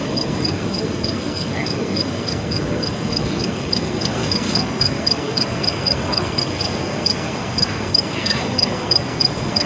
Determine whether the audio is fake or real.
fake